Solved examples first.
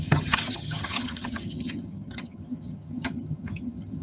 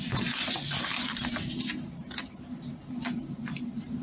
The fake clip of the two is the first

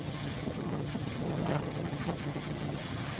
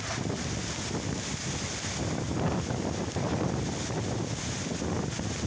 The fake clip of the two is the first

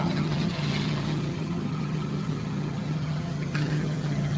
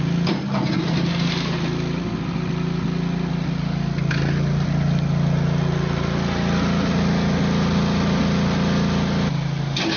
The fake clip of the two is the first